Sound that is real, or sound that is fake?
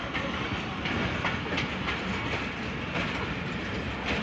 real